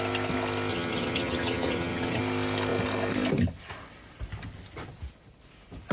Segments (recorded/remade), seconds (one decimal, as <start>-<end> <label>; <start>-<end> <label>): 0.0-0.7 recorded; 0.7-2.2 remade; 2.2-5.9 recorded